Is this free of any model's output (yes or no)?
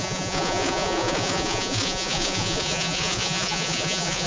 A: no